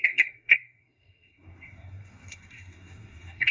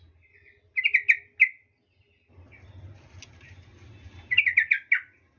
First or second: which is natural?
second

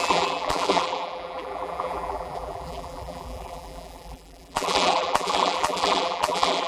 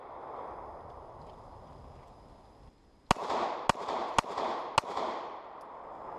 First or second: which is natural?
second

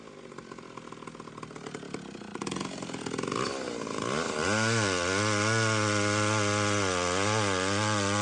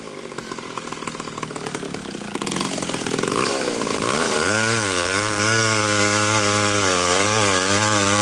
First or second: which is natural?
first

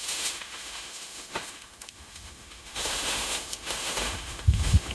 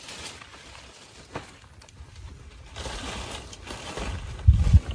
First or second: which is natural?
second